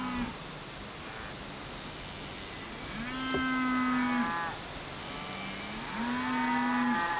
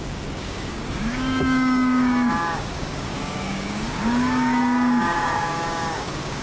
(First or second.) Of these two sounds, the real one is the first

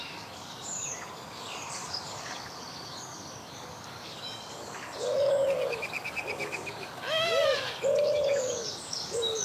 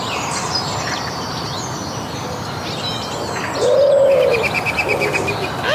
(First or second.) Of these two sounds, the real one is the second